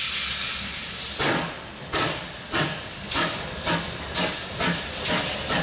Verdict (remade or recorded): recorded